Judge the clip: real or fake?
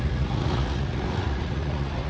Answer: fake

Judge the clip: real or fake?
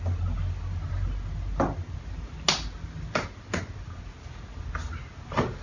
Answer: real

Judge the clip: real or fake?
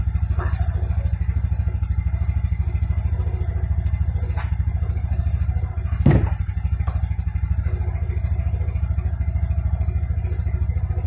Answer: real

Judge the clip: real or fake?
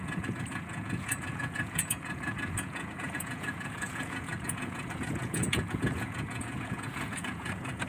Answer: fake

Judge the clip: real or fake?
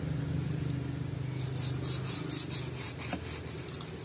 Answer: real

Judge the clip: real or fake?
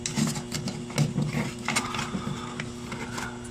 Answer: real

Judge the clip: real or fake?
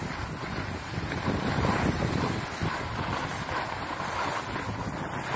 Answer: real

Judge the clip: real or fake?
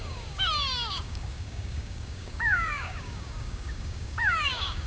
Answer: fake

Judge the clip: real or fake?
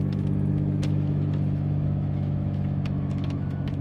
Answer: fake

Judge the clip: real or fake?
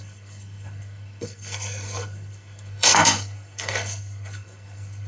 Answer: fake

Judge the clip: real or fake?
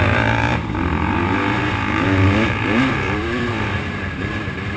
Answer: fake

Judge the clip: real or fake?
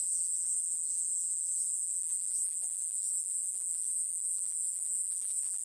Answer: fake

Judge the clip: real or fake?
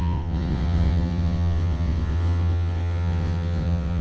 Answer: fake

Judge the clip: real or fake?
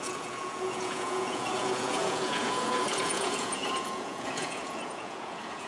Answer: fake